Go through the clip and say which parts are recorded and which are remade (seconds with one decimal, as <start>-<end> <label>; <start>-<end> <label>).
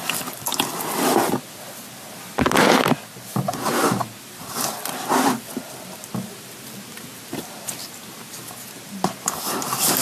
0.0-10.0 recorded